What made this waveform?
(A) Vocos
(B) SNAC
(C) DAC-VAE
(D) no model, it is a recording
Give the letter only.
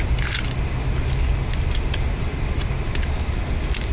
D